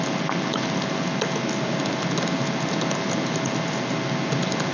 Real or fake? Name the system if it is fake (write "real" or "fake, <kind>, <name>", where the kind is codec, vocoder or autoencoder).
real